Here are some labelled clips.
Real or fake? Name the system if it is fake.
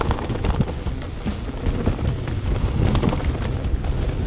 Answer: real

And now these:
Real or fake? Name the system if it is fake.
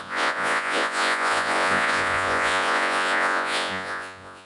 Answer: fake, vocoder, Vocos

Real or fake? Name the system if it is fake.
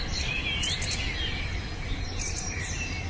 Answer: real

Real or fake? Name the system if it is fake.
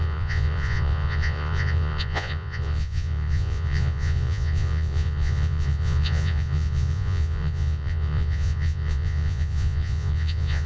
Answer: fake, vocoder, Vocos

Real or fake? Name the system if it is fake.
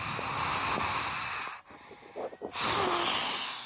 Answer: real